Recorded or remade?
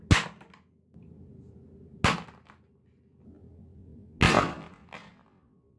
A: recorded